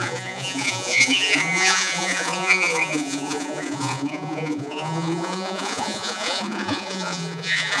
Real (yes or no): no